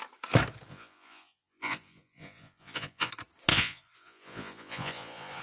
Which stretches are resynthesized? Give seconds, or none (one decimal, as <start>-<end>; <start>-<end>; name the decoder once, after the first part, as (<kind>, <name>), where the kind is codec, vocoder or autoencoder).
0.7-3.1 (vocoder, Vocos); 3.5-5.4